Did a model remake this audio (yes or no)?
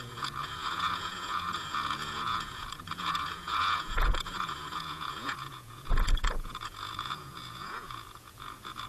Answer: yes